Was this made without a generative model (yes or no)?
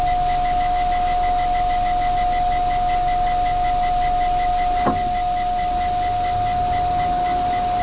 yes